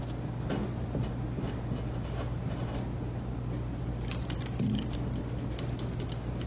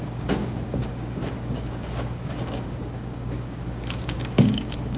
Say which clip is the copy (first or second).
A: second